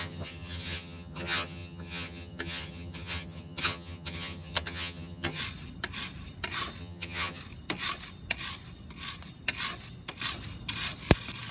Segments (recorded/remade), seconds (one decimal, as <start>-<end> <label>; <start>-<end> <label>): 0.0-5.4 remade; 5.4-6.8 recorded; 6.8-7.4 remade; 7.4-11.5 recorded